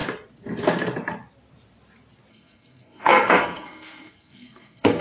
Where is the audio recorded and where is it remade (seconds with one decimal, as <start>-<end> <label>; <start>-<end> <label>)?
0.0-2.3 recorded; 2.3-5.0 remade

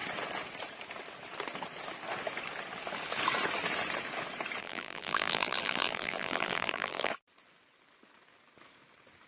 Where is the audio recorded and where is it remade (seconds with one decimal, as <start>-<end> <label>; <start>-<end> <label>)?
0.0-4.6 recorded; 4.6-7.1 remade; 7.1-9.3 recorded

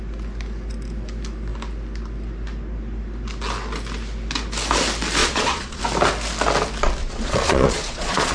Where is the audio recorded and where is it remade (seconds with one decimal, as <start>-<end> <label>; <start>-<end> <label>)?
0.0-5.2 recorded; 5.2-5.8 remade; 5.8-7.0 recorded; 7.0-8.3 remade

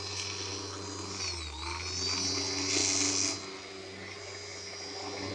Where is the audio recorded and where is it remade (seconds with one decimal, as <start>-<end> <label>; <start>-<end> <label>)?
0.0-5.3 recorded

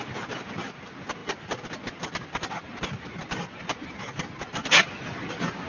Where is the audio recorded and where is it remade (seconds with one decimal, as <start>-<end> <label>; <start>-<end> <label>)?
0.0-5.7 recorded

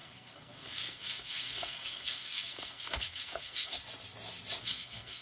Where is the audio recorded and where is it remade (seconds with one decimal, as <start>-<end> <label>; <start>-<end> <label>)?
0.0-3.8 remade; 3.8-4.6 recorded; 4.6-5.2 remade

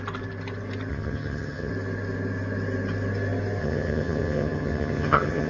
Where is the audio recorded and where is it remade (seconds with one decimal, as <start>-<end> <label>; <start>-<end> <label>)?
0.0-0.9 recorded; 0.9-1.7 remade; 1.7-3.6 recorded; 3.6-5.5 remade